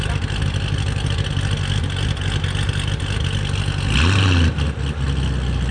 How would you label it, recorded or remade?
recorded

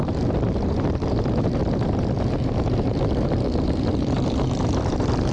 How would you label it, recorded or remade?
remade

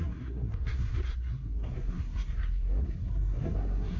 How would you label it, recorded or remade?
remade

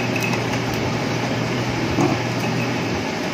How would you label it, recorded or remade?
remade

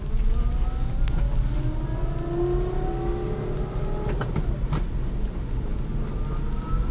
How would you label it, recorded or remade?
recorded